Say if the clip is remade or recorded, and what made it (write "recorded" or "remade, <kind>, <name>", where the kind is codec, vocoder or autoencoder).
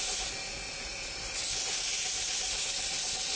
recorded